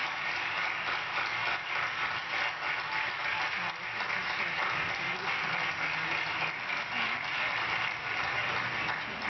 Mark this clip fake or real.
real